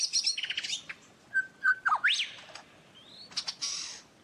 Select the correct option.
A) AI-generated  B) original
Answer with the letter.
B